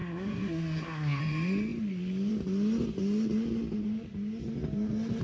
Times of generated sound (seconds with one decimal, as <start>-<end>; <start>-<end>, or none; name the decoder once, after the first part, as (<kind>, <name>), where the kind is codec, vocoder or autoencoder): 0.0-1.2 (codec, SNAC)